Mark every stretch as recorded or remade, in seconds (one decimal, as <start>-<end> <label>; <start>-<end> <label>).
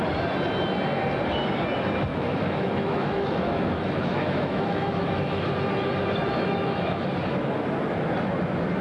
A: 0.0-2.1 recorded; 2.1-5.5 remade; 5.5-6.2 recorded; 6.2-7.1 remade; 7.1-8.8 recorded